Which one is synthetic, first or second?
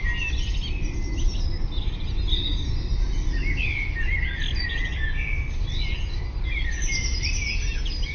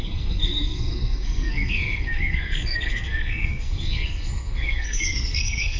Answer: second